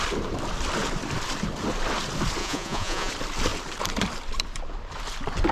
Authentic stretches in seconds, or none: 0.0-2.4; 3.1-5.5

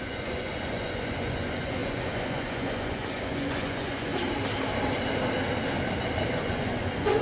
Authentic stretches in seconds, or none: 4.1-6.3

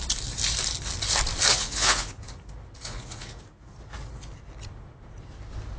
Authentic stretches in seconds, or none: 0.0-1.5; 2.3-2.8; 3.4-5.8

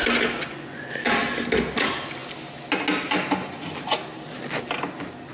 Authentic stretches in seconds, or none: 0.0-0.4; 1.1-5.3

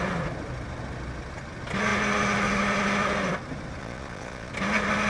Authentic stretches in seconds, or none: 0.0-3.8; 4.5-5.1

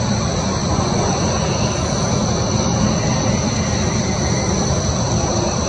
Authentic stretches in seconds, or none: 0.0-0.6; 1.5-5.7

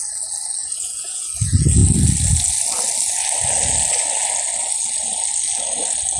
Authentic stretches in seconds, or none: 0.0-0.6; 1.3-6.2